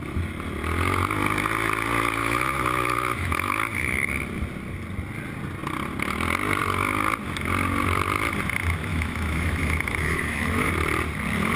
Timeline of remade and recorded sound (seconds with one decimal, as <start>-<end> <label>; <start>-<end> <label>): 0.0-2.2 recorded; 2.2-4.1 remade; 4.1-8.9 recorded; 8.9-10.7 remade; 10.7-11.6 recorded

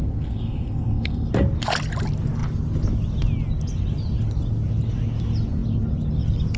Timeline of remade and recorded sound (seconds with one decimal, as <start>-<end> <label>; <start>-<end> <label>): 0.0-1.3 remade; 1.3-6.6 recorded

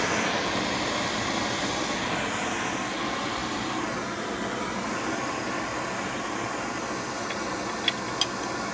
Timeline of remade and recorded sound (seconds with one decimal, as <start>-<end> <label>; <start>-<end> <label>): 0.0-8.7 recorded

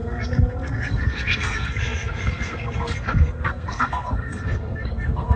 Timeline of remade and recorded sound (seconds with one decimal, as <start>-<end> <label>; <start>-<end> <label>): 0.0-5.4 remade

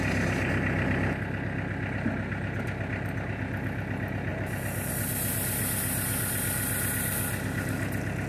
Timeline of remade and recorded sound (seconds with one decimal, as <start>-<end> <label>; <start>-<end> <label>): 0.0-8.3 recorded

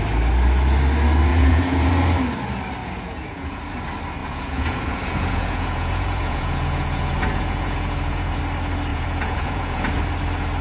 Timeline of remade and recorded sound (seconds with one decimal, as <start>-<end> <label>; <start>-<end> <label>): 0.0-1.3 recorded; 1.3-1.9 remade; 1.9-2.8 recorded; 2.8-3.7 remade; 3.7-4.2 recorded; 4.2-8.4 remade; 8.4-8.9 recorded; 8.9-9.9 remade; 9.9-10.6 recorded

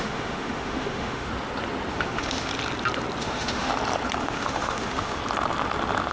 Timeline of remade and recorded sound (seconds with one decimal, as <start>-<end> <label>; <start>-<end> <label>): 0.0-1.3 remade; 1.3-1.9 recorded; 1.9-2.5 remade; 2.5-3.2 recorded; 3.2-3.7 remade; 3.7-4.2 recorded; 4.2-5.2 remade; 5.2-6.1 recorded

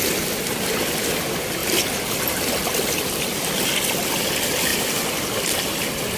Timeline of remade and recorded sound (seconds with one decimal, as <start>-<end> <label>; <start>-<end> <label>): 0.0-1.6 recorded; 1.6-2.4 remade; 2.4-6.2 recorded